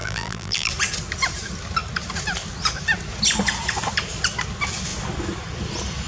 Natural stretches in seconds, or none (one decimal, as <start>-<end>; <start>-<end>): 0.7-6.1